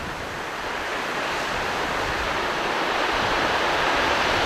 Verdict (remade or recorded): recorded